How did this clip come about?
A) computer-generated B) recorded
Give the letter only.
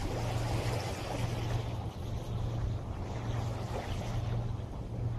B